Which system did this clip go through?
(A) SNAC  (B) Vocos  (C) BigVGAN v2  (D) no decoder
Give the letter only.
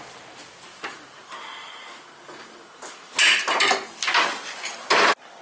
D